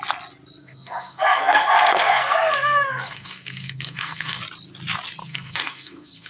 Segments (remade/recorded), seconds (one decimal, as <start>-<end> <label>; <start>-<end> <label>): 0.0-0.6 recorded; 0.6-4.4 remade; 4.4-5.2 recorded; 5.2-6.3 remade